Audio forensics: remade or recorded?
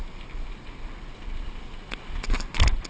recorded